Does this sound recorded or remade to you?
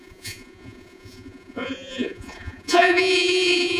remade